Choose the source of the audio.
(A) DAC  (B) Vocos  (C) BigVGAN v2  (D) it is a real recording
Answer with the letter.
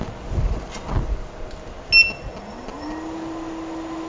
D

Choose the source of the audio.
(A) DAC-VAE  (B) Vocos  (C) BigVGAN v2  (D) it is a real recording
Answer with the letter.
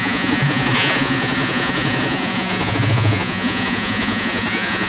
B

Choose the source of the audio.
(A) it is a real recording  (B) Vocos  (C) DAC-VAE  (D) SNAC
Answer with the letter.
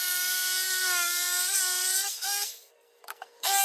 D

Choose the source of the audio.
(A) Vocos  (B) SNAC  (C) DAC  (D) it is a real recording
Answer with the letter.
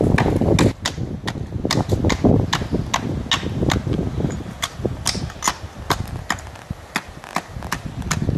D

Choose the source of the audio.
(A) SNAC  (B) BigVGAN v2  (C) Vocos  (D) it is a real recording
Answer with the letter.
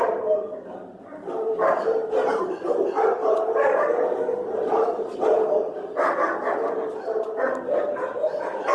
D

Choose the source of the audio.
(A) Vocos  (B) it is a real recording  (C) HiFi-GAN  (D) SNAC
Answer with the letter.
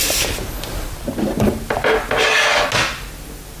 B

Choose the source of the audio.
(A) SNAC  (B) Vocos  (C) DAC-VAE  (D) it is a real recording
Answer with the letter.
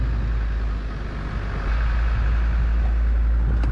D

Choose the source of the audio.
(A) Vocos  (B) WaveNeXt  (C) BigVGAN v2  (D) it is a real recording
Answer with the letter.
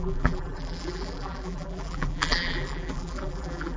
C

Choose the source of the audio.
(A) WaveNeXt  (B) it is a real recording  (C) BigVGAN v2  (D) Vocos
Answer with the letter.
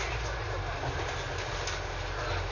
B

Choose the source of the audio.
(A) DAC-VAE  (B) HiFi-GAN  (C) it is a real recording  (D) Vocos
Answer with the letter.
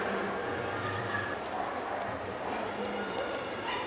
C